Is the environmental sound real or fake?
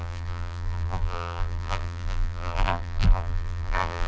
fake